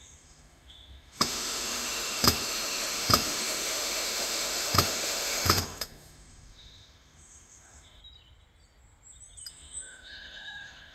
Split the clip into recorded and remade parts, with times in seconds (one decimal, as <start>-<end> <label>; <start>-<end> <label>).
0.0-8.0 remade; 8.0-9.5 recorded; 9.5-10.9 remade